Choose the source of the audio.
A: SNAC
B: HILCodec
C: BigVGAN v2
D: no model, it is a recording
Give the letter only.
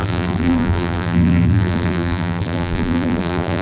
C